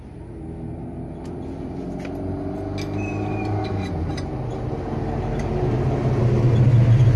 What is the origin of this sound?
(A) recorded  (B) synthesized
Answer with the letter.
A